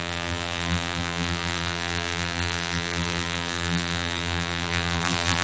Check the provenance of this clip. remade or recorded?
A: remade